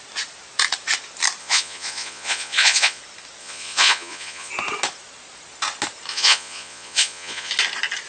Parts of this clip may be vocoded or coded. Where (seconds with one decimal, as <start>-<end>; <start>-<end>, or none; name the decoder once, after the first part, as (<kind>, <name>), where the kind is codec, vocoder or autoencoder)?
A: 1.4-3.0 (vocoder, Vocos); 3.4-4.5; 6.1-7.5